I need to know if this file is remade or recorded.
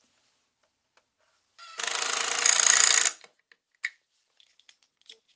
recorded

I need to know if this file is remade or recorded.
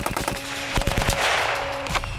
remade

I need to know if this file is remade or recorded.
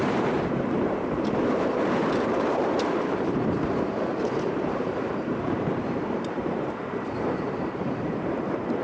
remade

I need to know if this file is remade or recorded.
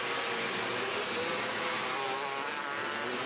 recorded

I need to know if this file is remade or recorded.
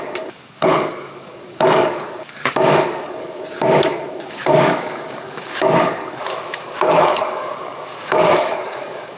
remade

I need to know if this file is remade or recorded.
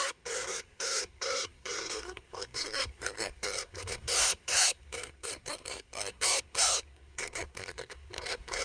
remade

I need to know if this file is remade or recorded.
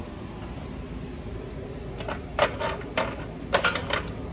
recorded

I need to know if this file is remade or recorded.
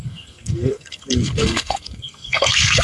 remade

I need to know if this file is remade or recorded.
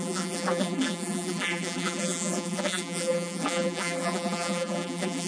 remade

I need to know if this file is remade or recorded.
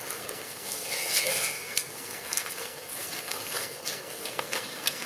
remade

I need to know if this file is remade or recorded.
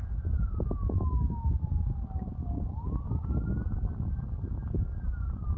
recorded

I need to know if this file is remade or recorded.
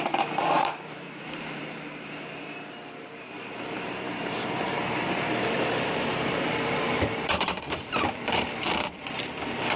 remade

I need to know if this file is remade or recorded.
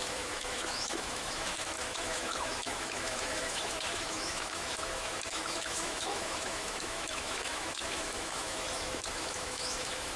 remade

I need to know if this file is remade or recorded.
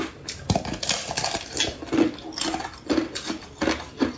recorded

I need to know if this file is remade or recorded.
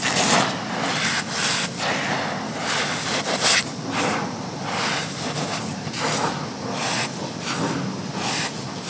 recorded